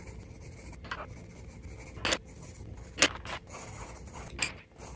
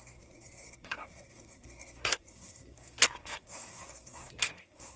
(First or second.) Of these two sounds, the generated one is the second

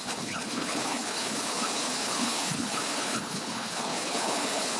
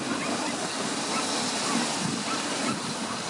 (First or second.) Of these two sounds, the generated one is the first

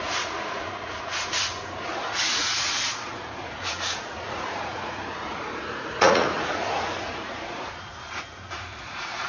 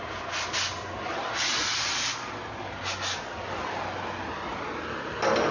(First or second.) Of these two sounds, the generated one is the first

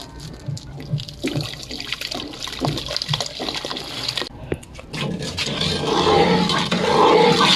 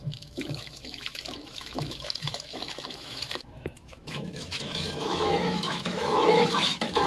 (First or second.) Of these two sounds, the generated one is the second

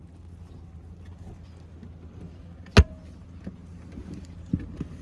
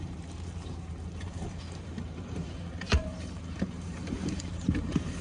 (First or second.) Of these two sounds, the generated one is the second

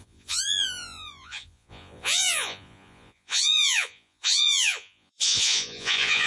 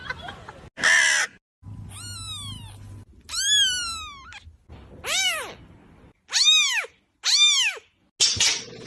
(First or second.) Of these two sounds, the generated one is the first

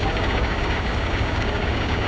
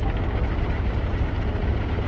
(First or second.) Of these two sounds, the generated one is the first